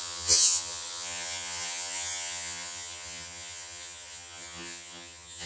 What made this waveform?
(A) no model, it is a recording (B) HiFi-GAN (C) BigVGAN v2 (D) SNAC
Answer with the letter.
B